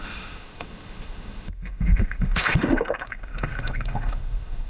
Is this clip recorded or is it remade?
remade